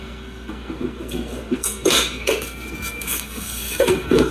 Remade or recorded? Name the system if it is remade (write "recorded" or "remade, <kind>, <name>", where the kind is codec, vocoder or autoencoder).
remade, codec, SNAC